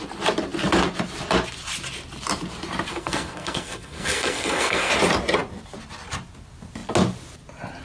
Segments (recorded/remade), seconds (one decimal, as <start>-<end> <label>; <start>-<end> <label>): 0.0-2.9 recorded; 2.9-4.9 remade; 4.9-7.8 recorded